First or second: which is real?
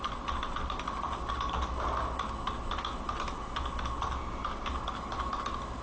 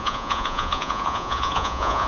first